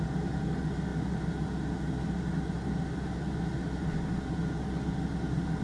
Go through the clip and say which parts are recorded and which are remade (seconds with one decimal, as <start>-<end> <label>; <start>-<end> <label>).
0.0-5.6 recorded